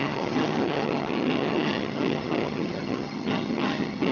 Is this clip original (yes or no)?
no